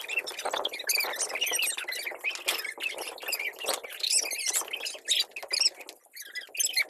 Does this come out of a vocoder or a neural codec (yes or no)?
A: no